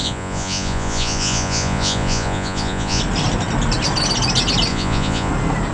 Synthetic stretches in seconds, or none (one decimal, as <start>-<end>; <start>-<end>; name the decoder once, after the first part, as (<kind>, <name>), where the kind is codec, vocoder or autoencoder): 0.0-3.0 (vocoder, Vocos); 4.7-5.3